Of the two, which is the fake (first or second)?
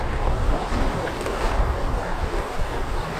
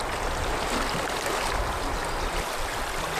first